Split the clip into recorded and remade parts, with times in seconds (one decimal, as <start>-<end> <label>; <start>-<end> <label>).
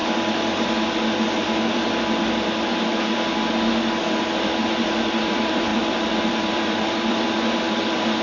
0.0-1.6 recorded; 1.6-2.9 remade; 2.9-4.0 recorded; 4.0-8.2 remade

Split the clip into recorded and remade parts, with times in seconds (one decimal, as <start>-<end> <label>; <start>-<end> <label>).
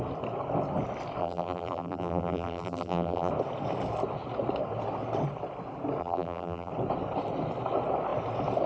0.0-1.2 recorded; 1.2-3.3 remade; 3.3-6.0 recorded; 6.0-6.7 remade; 6.7-8.7 recorded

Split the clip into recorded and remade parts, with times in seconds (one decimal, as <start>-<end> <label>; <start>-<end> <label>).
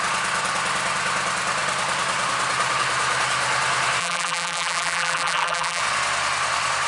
0.0-4.0 recorded; 4.0-5.8 remade; 5.8-6.9 recorded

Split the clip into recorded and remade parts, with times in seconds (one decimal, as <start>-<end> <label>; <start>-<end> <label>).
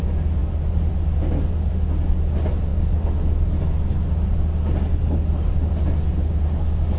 0.0-7.0 recorded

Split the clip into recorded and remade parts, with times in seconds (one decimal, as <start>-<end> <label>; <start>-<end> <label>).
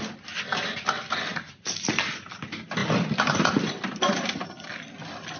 0.0-1.3 recorded; 1.3-2.0 remade; 2.0-2.8 recorded; 2.8-3.5 remade; 3.5-5.4 recorded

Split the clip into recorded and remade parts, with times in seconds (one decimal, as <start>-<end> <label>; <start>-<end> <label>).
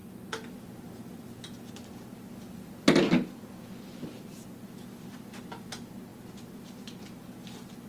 0.0-7.9 recorded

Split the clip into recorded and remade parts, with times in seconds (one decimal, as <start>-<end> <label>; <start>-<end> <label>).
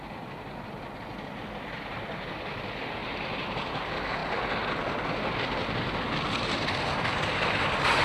0.0-3.0 recorded; 3.0-3.7 remade; 3.7-8.0 recorded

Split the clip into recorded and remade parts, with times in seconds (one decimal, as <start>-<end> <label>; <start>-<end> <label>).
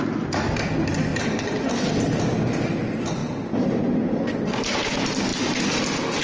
0.0-6.2 recorded